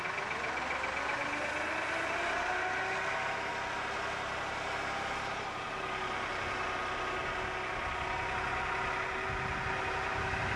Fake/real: real